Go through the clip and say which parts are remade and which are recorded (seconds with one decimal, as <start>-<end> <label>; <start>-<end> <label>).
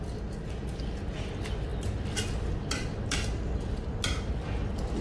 0.0-5.0 recorded